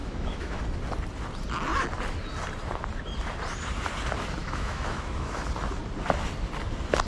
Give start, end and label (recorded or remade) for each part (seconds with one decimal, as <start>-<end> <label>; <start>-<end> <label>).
0.0-0.6 remade; 0.6-4.4 recorded; 4.4-5.4 remade; 5.4-7.1 recorded